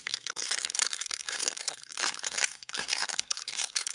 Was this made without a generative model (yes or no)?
no